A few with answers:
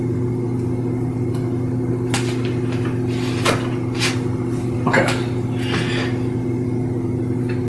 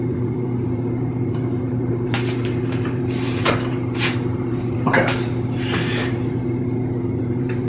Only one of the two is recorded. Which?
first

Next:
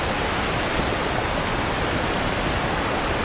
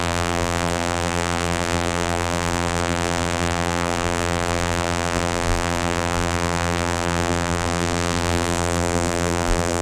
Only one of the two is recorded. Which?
first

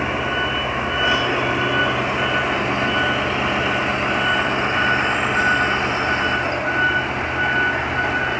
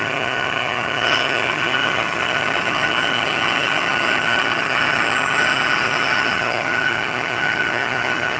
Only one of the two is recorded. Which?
first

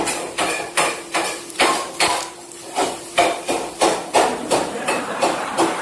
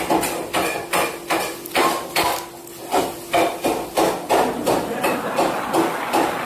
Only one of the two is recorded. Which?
second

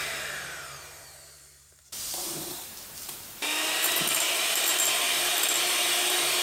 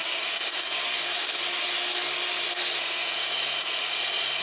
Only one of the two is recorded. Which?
second